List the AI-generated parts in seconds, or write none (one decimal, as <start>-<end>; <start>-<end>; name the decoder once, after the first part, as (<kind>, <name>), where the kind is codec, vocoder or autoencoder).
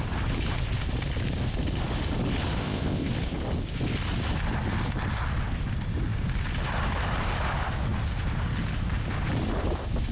2.6-3.1 (codec, ZipCodec)